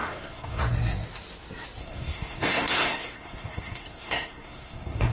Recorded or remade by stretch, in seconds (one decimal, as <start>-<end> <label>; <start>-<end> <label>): 0.0-0.6 remade; 0.6-1.8 recorded; 1.8-5.1 remade